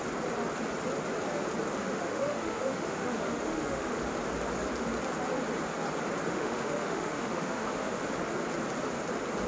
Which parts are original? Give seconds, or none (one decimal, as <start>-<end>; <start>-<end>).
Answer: 0.0-1.8; 3.9-6.3; 8.0-9.5